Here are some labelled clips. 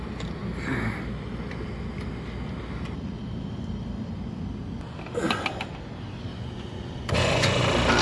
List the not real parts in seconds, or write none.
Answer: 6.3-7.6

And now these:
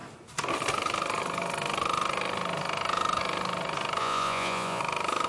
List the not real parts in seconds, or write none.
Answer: 4.0-4.8

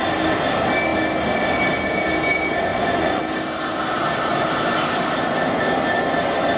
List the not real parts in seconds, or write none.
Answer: 2.7-3.2

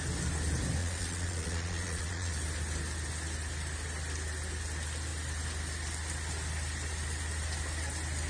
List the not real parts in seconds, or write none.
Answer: 0.8-2.3